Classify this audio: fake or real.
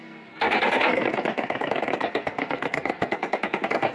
fake